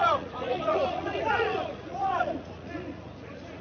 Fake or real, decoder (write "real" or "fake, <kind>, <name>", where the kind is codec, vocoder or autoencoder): fake, vocoder, Vocos